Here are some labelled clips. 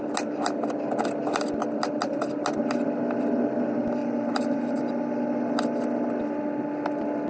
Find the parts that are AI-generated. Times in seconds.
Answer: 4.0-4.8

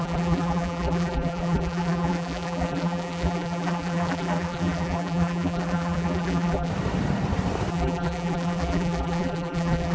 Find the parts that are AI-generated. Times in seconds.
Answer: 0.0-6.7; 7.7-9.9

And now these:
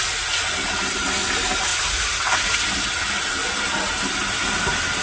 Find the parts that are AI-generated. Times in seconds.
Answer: none